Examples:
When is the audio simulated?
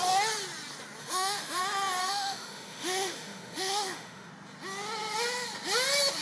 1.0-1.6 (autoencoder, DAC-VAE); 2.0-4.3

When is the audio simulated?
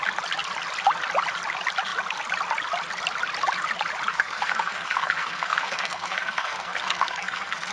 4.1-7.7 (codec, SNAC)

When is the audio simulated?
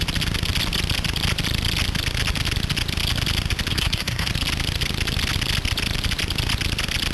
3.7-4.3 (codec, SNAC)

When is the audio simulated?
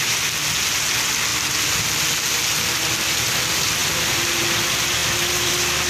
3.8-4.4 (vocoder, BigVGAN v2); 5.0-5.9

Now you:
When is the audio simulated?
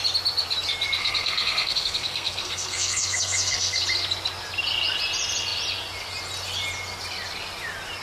1.0-3.8 (codec, SNAC)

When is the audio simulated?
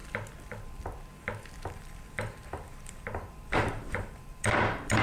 1.7-5.0 (vocoder, BigVGAN v2)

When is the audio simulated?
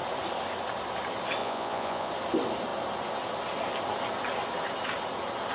1.4-2.1 (vocoder, Vocos)